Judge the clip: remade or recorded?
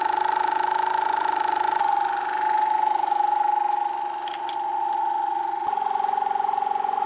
recorded